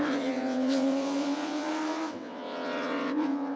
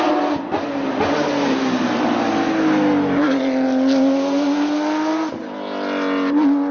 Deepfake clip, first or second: first